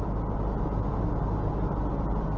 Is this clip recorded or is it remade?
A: recorded